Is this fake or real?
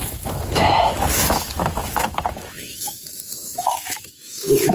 fake